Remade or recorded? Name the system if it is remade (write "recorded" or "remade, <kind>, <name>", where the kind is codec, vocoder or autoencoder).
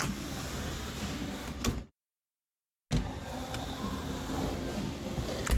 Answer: recorded